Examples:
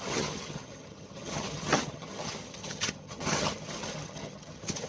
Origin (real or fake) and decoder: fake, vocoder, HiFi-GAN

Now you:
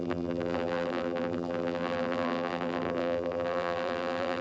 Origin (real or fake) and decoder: fake, vocoder, BigVGAN v2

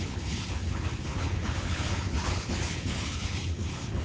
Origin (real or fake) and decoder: fake, codec, HILCodec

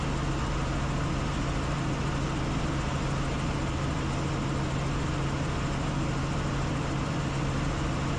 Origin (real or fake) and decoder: real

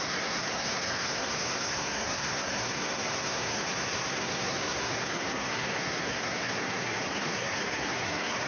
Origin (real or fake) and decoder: fake, codec, SNAC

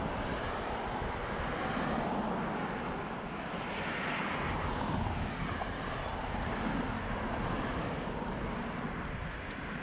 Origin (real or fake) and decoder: real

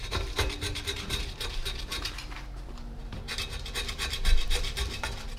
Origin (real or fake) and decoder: fake, vocoder, BigVGAN v2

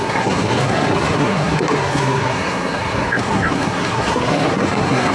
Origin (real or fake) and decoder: fake, codec, SNAC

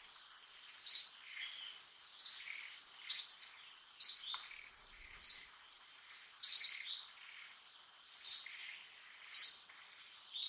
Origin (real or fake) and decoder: real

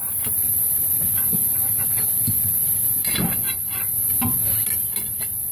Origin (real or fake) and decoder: real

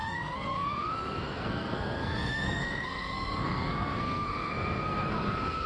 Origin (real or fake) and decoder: fake, codec, SNAC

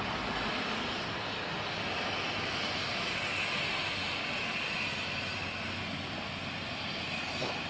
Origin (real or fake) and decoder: real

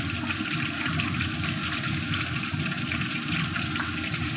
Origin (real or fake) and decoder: real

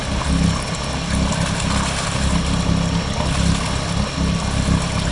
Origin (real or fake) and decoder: real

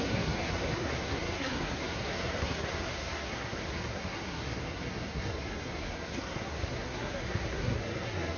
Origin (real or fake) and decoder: fake, codec, SNAC